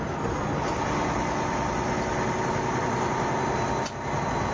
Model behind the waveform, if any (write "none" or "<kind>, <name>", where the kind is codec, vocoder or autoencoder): none